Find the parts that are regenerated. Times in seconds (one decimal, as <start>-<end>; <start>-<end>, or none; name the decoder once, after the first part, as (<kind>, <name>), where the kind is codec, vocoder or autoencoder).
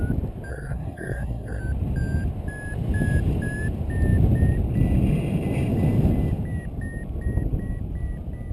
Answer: 0.5-1.6 (codec, SNAC)